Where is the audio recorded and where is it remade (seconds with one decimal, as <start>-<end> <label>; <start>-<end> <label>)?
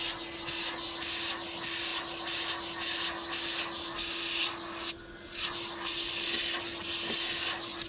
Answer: 0.0-7.9 recorded